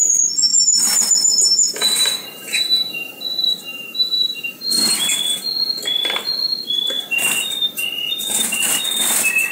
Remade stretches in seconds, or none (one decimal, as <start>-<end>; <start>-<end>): 0.5-2.9; 3.7-4.4